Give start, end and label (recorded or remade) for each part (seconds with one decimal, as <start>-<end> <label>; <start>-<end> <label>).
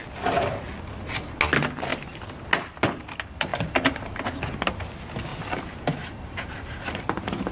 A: 0.0-1.9 recorded; 1.9-2.5 remade; 2.5-3.5 recorded; 3.5-4.4 remade; 4.4-5.3 recorded; 5.3-7.5 remade